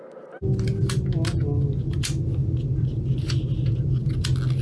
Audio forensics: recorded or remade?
recorded